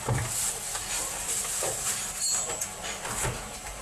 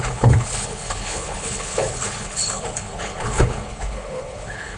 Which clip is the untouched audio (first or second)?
first